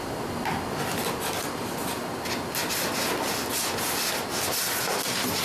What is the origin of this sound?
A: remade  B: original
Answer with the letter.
B